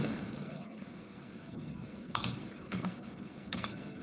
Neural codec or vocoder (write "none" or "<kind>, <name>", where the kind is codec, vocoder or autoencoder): codec, SNAC